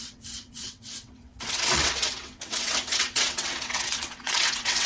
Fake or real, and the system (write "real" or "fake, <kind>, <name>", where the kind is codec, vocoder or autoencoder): fake, vocoder, WaveNeXt